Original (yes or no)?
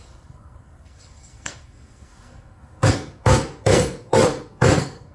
no